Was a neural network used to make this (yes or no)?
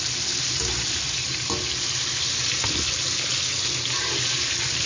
no